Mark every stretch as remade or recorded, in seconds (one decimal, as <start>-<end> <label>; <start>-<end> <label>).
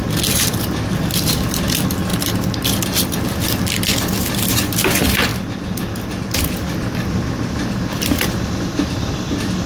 0.0-9.7 recorded